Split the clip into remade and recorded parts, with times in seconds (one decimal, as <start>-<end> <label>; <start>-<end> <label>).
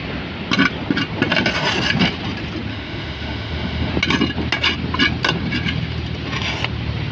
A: 0.0-2.7 recorded; 2.7-3.9 remade; 3.9-7.1 recorded